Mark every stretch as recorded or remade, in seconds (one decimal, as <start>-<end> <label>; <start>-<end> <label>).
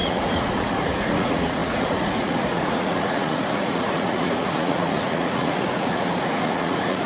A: 0.0-7.1 remade